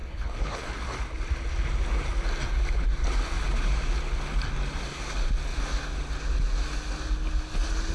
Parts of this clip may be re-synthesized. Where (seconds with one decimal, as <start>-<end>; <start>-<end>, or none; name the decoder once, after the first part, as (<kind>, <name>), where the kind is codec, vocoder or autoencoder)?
0.0-0.7 (codec, HILCodec)